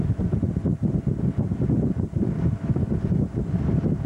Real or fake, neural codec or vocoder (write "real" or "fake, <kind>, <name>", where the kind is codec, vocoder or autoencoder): real